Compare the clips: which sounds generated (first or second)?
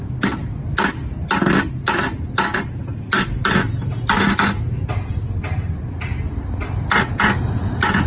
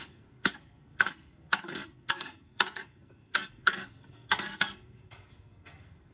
second